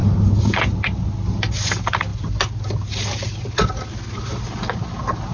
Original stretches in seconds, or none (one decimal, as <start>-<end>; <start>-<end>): 0.6-5.3